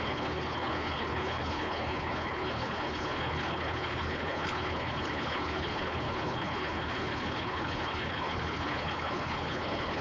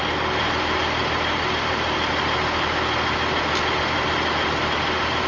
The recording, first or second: second